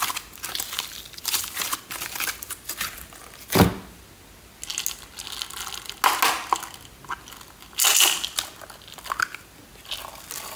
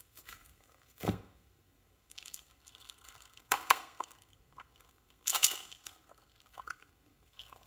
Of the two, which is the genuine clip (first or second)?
first